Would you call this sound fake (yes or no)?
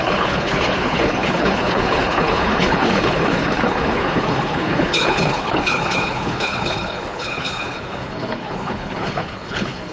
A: yes